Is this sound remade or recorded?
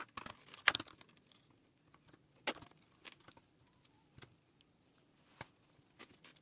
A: recorded